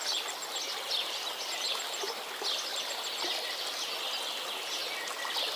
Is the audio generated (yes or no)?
no